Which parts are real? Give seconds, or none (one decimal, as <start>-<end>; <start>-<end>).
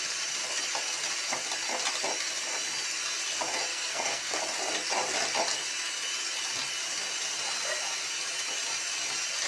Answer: 0.0-3.7; 4.4-9.5